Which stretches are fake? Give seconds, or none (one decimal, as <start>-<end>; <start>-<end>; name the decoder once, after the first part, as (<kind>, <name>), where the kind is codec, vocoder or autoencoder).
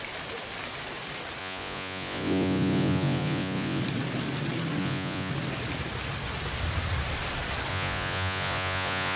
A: 1.4-3.8 (vocoder, Vocos); 4.8-5.3; 7.7-9.2